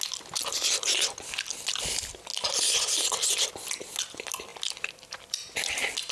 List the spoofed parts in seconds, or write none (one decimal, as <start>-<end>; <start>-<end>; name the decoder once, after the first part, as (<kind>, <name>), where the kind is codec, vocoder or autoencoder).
none

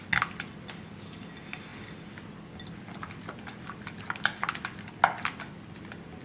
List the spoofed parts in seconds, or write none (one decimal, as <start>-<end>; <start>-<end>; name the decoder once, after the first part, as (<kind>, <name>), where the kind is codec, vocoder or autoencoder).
none

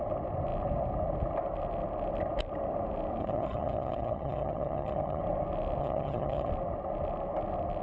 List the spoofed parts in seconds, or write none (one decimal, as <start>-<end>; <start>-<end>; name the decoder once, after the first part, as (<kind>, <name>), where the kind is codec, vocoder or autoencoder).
3.2-5.2 (vocoder, HiFi-GAN); 5.8-6.5